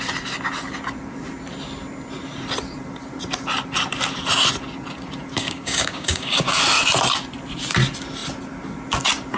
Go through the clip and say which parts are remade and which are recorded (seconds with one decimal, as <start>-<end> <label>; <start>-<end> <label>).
0.0-5.3 recorded; 5.3-6.6 remade; 6.6-9.4 recorded